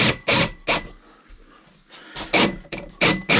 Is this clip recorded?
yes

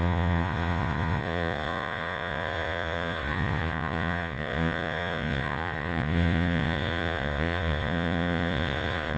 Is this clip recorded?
no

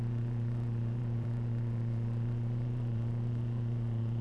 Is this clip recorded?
no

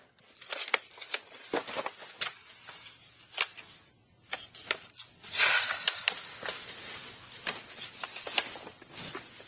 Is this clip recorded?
yes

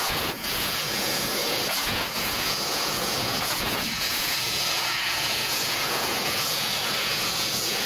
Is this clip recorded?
no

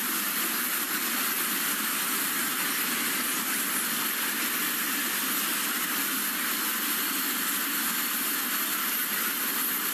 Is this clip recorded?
yes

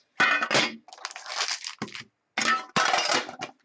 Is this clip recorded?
yes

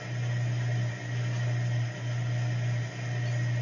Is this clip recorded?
yes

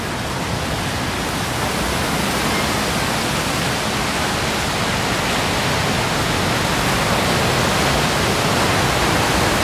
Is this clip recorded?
yes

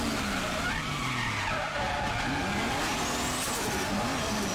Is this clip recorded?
yes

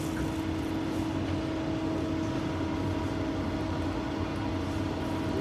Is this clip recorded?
yes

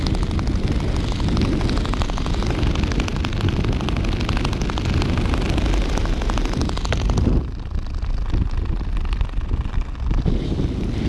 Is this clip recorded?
yes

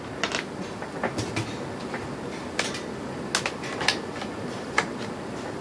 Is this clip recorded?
yes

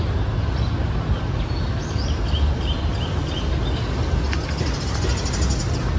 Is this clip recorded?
yes